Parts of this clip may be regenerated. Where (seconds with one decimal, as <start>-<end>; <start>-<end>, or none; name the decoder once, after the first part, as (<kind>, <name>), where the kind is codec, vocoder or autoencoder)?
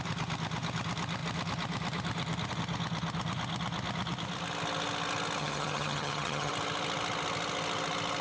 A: 5.4-6.5 (vocoder, HiFi-GAN)